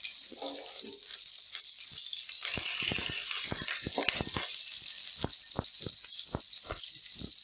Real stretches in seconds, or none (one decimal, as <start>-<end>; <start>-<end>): 0.0-3.0; 4.1-7.4